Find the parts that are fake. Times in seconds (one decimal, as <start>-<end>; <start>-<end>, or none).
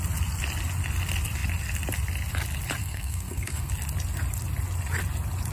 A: 2.8-3.7